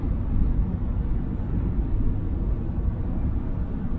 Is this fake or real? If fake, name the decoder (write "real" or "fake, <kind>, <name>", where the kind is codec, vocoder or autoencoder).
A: real